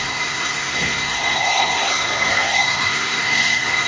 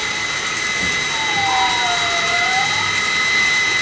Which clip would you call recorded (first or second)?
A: second